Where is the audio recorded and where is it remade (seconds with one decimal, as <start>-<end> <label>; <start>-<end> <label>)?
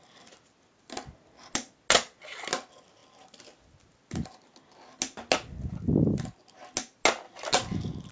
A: 0.0-8.1 recorded